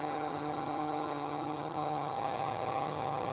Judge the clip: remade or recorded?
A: remade